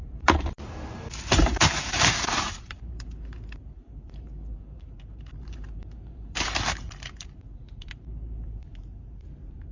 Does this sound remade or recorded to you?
remade